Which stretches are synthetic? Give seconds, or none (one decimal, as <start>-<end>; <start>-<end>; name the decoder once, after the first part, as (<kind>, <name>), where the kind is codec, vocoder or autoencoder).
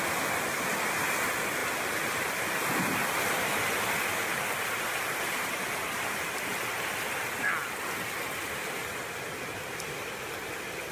none